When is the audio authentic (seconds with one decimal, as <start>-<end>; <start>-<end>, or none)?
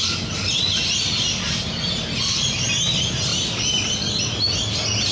0.0-5.1